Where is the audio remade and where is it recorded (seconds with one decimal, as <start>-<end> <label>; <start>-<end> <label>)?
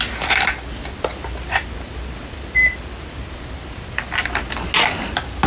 0.0-1.1 recorded; 1.1-4.4 remade; 4.4-5.5 recorded